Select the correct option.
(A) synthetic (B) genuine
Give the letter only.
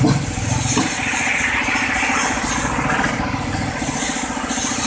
B